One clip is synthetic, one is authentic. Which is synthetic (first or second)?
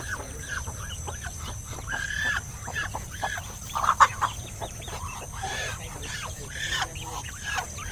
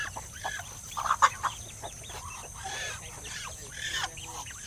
first